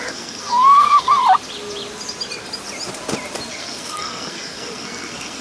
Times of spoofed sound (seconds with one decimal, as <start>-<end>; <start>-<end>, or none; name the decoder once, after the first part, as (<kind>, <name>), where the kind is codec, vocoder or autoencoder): 0.0-1.2 (codec, SNAC); 3.5-5.4